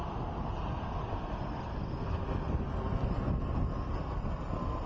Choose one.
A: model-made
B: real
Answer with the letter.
B